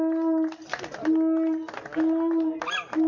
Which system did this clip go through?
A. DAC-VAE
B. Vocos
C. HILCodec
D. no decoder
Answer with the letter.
D